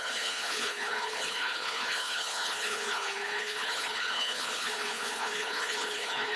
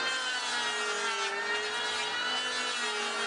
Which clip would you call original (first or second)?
second